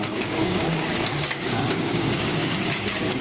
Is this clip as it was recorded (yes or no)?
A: no